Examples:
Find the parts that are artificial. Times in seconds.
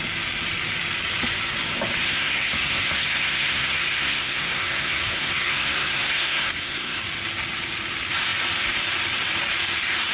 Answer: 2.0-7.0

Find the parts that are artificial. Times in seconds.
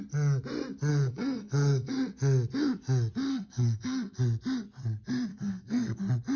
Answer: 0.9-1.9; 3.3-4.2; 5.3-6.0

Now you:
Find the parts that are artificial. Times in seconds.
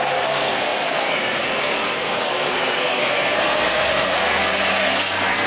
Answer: 0.0-5.5